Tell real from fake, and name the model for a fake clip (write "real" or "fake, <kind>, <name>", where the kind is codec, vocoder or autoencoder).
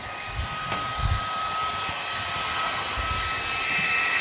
real